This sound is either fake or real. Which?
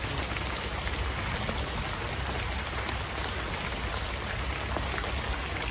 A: real